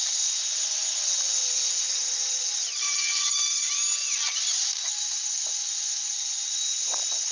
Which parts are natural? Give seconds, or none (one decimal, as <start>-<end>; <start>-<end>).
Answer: 0.0-1.9; 3.4-7.3